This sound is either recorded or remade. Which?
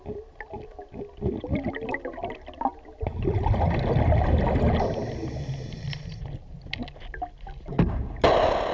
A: recorded